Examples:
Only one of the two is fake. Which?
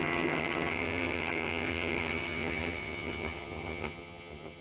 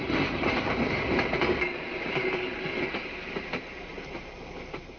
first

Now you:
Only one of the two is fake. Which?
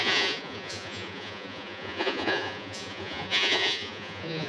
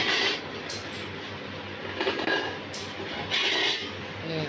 first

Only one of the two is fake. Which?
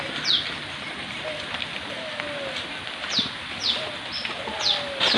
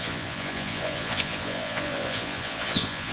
second